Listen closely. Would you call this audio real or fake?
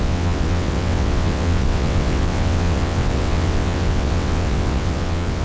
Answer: fake